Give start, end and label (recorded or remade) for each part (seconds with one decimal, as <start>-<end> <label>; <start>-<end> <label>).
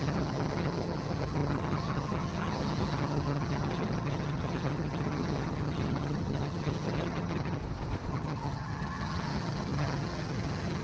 0.0-7.6 remade; 7.6-8.1 recorded; 8.1-10.8 remade